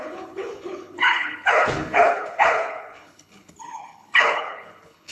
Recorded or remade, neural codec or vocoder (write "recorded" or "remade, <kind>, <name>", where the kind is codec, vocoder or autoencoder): remade, codec, HILCodec